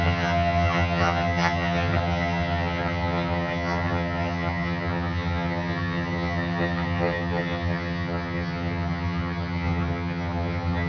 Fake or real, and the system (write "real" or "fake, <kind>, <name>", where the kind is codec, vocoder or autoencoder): fake, vocoder, HiFi-GAN